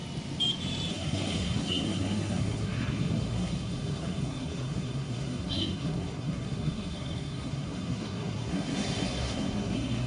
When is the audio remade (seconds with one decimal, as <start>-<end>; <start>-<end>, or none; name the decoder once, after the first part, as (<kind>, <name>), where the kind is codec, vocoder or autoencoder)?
0.9-10.1 (codec, SNAC)